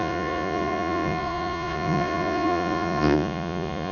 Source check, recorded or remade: remade